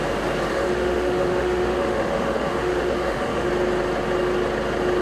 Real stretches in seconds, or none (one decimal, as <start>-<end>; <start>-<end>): 0.0-0.5; 3.5-5.0